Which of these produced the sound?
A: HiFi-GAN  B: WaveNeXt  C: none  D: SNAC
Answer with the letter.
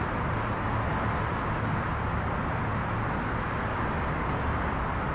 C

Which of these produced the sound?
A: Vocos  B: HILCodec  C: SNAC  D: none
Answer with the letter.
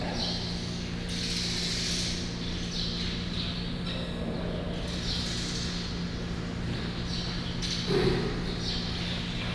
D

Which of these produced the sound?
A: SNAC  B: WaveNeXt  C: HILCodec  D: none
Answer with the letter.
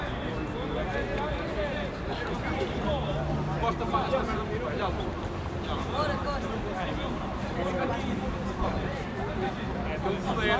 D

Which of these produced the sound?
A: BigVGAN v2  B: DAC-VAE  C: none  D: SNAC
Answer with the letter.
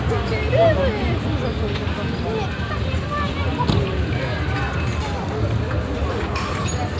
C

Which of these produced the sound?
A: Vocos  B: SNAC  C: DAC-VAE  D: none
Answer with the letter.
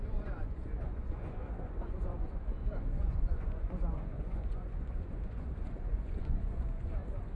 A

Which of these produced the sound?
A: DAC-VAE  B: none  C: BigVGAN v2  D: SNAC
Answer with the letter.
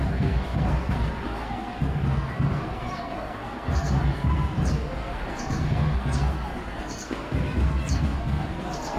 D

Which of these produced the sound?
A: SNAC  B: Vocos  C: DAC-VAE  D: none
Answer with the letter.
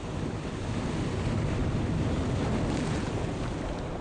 D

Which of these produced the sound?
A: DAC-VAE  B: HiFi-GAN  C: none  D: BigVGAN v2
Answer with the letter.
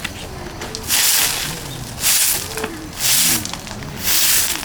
C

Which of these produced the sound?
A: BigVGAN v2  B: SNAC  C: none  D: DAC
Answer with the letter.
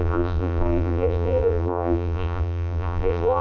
A